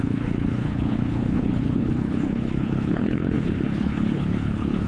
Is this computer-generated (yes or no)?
yes